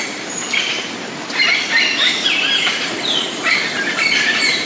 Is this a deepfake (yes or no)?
yes